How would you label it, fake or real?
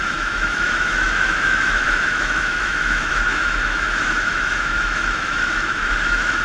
fake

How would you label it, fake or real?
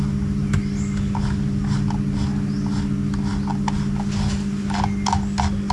real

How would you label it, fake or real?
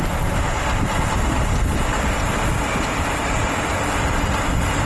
fake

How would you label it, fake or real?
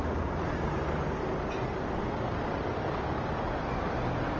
real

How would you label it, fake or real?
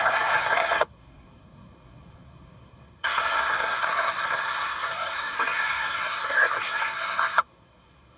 fake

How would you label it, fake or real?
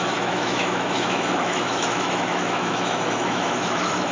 fake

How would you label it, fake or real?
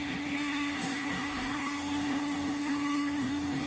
fake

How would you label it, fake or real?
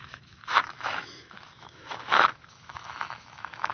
fake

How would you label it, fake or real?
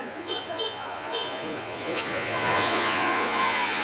fake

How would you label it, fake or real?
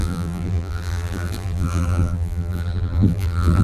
fake